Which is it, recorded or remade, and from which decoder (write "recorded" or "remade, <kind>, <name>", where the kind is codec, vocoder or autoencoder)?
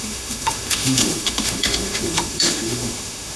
remade, autoencoder, DAC-VAE